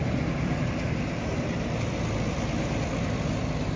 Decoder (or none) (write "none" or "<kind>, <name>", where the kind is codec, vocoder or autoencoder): none